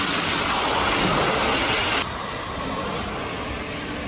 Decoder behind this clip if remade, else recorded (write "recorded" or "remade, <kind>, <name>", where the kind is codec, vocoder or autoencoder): recorded